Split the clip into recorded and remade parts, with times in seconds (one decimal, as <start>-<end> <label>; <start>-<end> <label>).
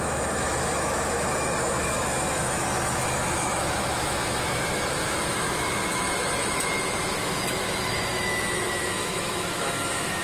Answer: 0.0-10.2 remade